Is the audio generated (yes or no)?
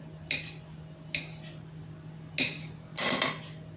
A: no